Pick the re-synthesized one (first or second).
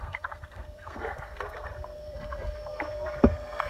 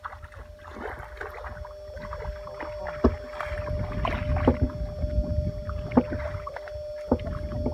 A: first